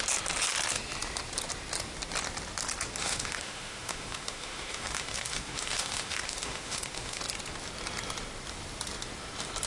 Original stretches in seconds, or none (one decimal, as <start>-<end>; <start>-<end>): 0.0-3.0; 7.2-9.7